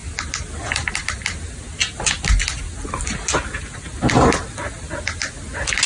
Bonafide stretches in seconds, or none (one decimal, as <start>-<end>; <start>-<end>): 0.0-5.9